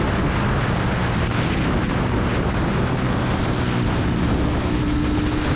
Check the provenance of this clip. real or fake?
real